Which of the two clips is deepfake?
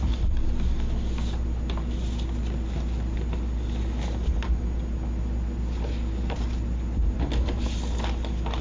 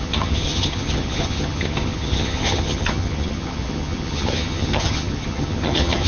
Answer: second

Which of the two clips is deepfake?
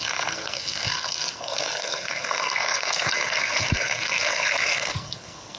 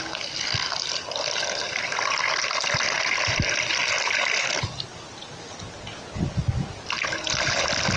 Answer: first